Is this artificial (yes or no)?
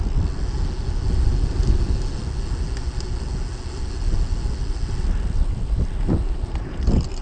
no